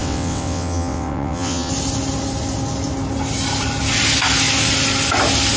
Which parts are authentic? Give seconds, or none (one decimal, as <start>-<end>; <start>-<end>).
1.7-5.6